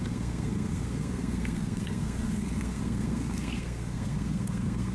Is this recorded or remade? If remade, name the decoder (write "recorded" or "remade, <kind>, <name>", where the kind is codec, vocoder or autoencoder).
remade, codec, SNAC